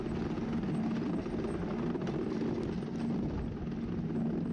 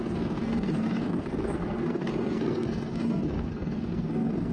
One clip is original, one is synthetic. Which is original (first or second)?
first